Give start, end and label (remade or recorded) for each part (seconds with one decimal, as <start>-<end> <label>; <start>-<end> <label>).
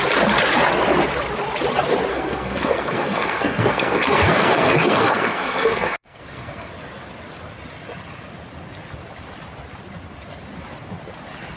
0.0-2.1 recorded; 2.1-6.7 remade; 6.7-11.6 recorded